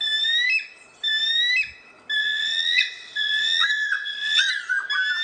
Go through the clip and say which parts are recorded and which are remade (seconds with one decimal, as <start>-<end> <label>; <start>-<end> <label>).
0.0-2.2 recorded; 2.2-4.5 remade; 4.5-5.2 recorded